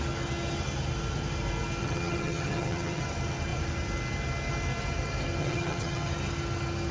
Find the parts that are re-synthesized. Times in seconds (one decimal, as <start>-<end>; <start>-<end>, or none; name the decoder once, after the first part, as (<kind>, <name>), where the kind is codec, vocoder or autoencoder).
1.8-3.0 (vocoder, HiFi-GAN); 5.4-6.1